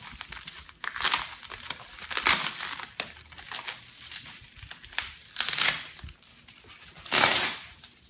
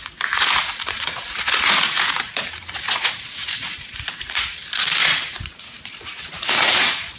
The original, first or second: first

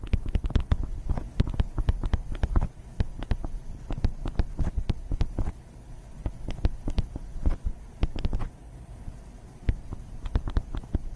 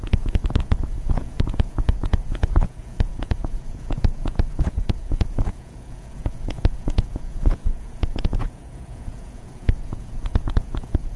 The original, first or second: first